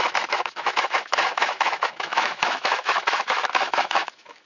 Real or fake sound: fake